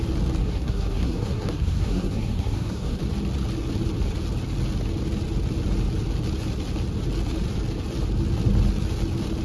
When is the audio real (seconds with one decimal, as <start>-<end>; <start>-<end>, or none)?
0.0-0.4; 3.0-9.4

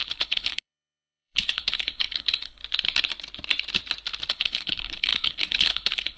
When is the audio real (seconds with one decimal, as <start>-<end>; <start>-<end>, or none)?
2.6-4.3